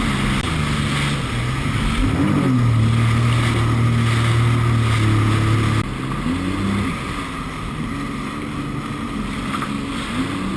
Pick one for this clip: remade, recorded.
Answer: recorded